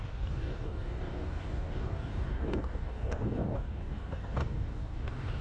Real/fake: fake